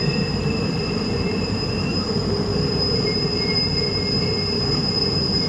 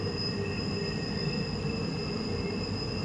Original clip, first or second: second